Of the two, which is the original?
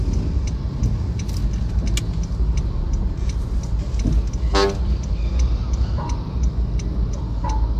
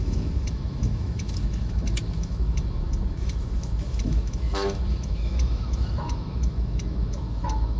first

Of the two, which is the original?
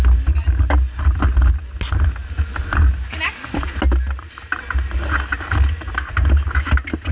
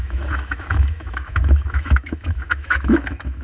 first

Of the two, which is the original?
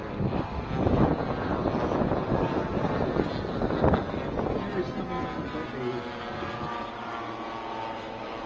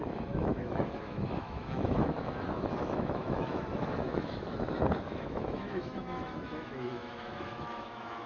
first